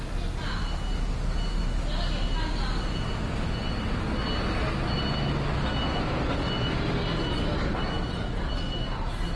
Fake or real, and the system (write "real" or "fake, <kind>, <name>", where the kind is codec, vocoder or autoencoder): real